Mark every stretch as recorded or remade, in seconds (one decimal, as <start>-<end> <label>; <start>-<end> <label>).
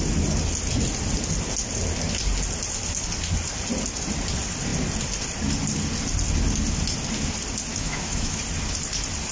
0.0-7.7 recorded; 7.7-8.4 remade; 8.4-9.3 recorded